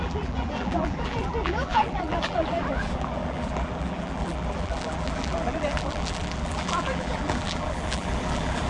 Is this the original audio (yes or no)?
no